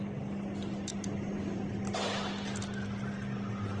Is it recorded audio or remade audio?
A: recorded